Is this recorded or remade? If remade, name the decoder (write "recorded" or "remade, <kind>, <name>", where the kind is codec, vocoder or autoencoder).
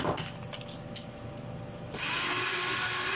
recorded